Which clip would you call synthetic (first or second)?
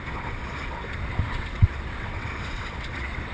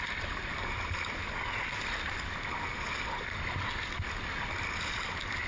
first